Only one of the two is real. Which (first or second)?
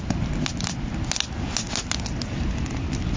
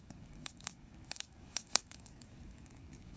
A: first